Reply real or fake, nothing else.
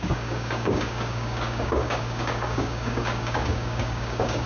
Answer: fake